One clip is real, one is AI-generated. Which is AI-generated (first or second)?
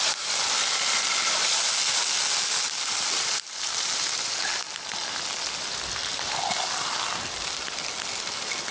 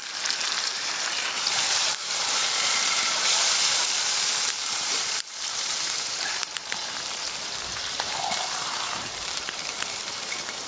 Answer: second